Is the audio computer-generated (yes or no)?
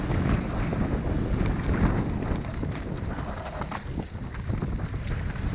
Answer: no